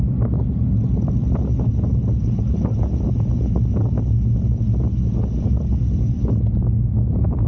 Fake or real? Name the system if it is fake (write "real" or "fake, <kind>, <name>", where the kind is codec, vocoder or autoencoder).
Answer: real